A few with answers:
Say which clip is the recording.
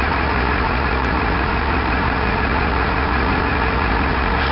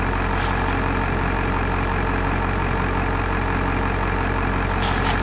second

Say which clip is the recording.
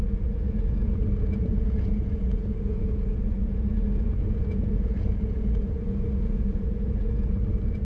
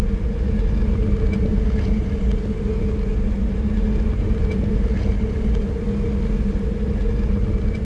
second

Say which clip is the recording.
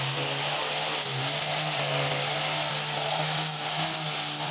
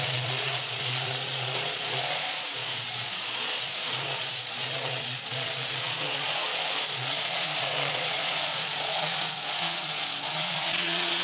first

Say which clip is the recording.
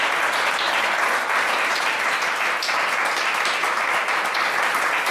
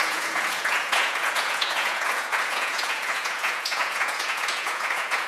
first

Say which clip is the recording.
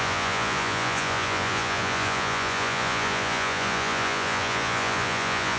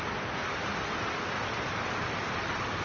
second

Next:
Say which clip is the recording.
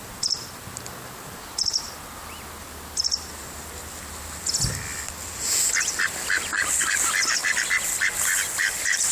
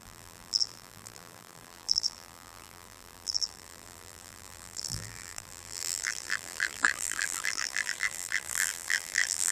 first